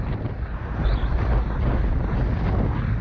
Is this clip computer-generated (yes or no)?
no